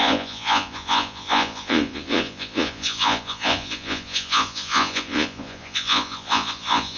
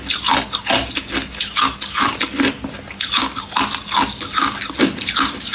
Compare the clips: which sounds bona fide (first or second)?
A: second